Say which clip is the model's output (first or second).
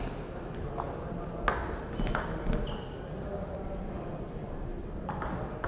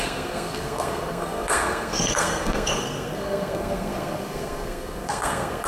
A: second